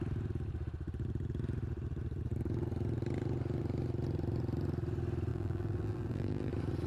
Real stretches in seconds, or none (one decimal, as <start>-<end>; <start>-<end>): 0.0-5.3; 6.5-6.9